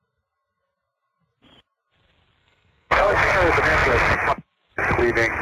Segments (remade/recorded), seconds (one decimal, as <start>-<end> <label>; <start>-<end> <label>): 0.0-2.4 recorded; 2.4-3.3 remade; 3.3-5.4 recorded